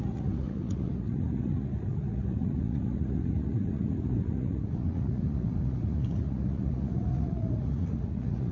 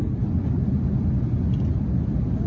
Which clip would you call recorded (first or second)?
second